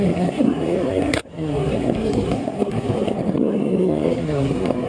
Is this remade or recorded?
remade